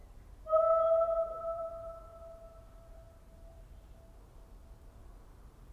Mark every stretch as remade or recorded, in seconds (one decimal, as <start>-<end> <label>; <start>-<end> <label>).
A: 0.0-1.7 remade; 1.7-5.7 recorded